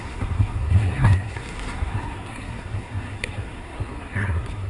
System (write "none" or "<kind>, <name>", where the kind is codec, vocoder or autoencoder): codec, SNAC